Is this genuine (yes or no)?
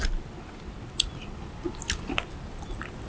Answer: yes